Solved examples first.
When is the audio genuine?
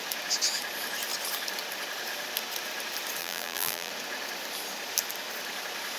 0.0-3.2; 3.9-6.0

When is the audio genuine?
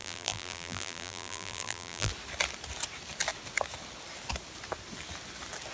2.1-5.7